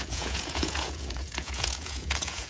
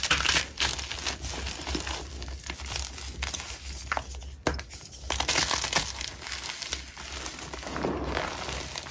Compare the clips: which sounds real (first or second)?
second